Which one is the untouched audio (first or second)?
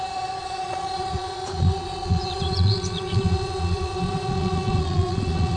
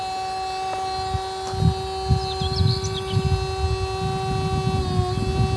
second